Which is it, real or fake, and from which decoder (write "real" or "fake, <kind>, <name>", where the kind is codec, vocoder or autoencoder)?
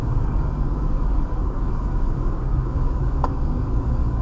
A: fake, codec, DAC